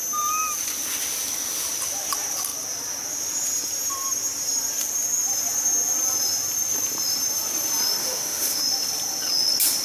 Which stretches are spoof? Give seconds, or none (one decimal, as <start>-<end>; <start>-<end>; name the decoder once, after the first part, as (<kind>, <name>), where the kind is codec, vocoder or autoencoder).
8.0-8.6 (autoencoder, DAC-VAE)